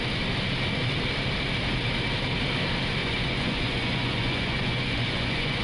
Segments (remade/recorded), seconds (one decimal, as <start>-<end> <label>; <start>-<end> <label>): 0.0-3.0 recorded; 3.0-5.6 remade